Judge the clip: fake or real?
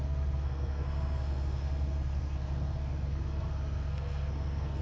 fake